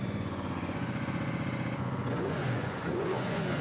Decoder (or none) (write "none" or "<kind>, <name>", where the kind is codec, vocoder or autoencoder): vocoder, Vocos